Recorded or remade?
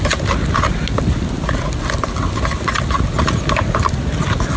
recorded